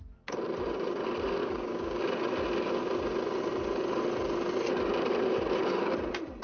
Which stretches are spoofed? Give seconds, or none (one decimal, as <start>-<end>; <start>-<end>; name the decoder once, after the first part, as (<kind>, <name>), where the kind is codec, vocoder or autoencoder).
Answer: 1.4-2.0 (codec, DAC)